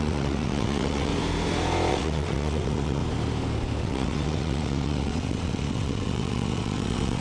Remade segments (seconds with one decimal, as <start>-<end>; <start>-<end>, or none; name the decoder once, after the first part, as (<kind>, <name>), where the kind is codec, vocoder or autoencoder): 0.0-1.1 (vocoder, WaveNeXt); 1.9-3.0; 3.8-7.2